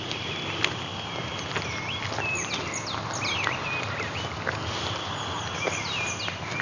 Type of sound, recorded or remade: recorded